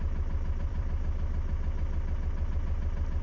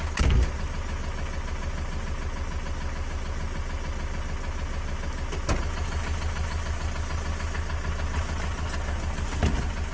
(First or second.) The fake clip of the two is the first